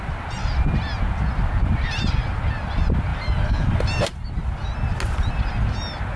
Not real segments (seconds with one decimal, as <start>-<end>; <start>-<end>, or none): 3.1-4.5